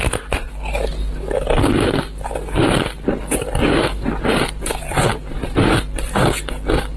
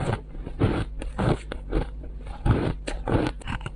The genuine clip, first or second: first